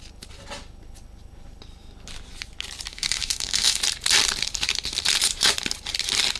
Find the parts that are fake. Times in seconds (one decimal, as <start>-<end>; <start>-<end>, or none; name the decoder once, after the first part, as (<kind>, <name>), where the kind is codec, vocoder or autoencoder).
2.9-3.8 (autoencoder, DAC-VAE)